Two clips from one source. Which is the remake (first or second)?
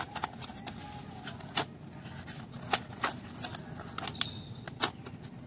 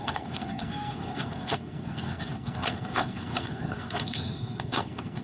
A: second